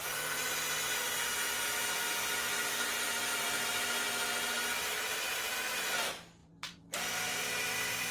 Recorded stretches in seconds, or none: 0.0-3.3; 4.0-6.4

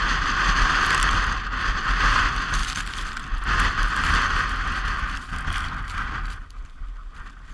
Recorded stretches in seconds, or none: 0.0-7.5

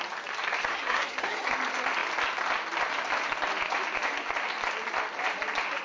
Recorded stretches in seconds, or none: 0.0-0.7; 1.5-5.8

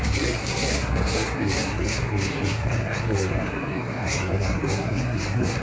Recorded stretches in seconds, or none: none